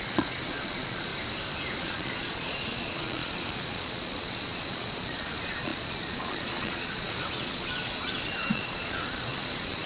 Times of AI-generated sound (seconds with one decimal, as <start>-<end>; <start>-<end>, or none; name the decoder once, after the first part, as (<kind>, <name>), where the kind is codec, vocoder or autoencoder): 0.0-1.1 (vocoder, Vocos); 1.8-9.9